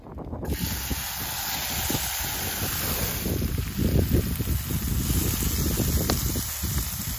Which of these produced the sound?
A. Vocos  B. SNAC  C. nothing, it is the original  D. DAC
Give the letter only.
C